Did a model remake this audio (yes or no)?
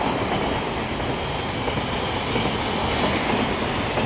no